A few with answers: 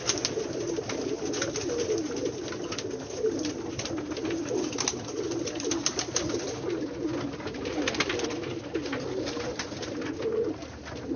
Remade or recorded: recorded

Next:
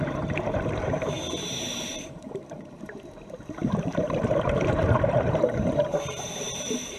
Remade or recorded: remade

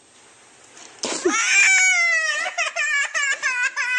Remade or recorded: recorded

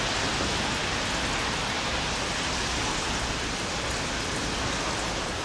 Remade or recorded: recorded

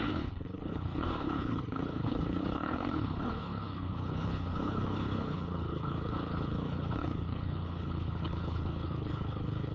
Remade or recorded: remade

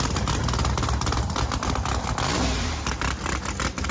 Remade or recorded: recorded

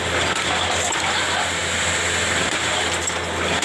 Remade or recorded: recorded